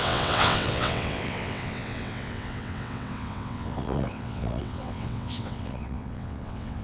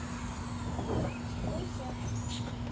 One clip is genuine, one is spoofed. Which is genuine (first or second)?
second